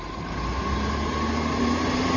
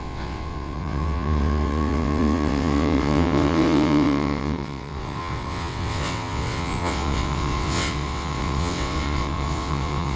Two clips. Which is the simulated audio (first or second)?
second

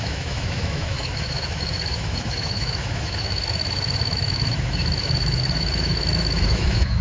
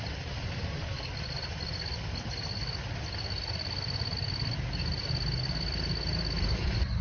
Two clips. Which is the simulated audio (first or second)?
first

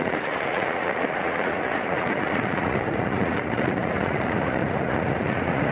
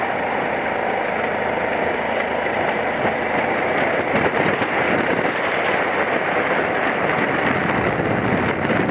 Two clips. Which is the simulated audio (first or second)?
first